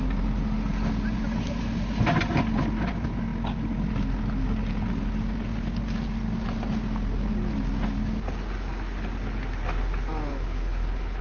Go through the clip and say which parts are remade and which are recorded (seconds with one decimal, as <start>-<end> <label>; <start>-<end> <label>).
0.0-10.3 recorded; 10.3-11.2 remade